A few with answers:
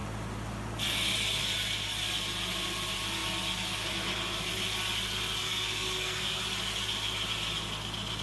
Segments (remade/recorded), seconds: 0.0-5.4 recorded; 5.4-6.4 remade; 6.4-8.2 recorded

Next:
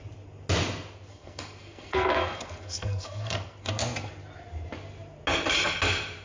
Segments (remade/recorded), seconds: 0.0-1.1 recorded; 1.1-3.7 remade; 3.7-6.2 recorded

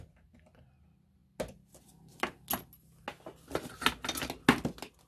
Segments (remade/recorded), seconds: 0.0-5.1 recorded

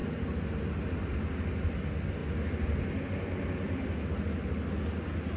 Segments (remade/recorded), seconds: 0.0-5.4 recorded